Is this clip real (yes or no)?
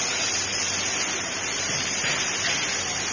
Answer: no